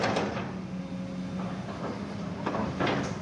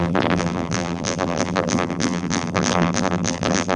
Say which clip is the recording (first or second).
first